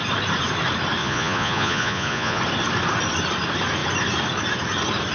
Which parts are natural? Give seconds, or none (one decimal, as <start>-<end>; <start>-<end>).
0.0-1.0; 2.4-5.1